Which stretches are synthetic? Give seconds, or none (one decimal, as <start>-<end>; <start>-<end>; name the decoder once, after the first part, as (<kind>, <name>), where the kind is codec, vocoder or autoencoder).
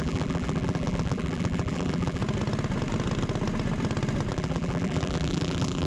0.0-2.2 (vocoder, BigVGAN v2); 4.3-5.9